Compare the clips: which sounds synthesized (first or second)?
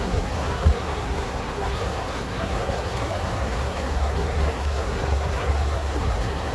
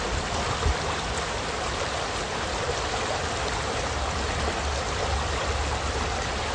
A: first